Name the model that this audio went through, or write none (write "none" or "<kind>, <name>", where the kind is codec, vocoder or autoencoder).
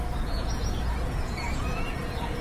vocoder, Vocos